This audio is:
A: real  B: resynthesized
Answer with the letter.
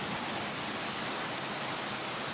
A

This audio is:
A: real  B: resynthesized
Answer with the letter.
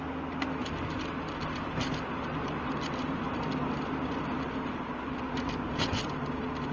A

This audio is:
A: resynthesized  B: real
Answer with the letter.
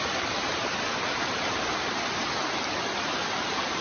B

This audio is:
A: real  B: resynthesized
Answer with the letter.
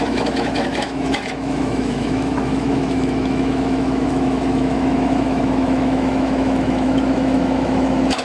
B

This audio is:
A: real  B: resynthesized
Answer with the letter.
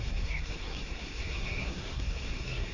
B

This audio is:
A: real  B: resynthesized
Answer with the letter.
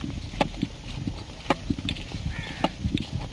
A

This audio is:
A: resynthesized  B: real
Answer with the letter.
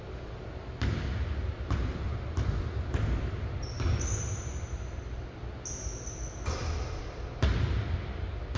B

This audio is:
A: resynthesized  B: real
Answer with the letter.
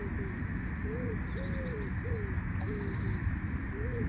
B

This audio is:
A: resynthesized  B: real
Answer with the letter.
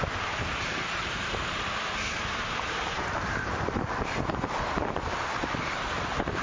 A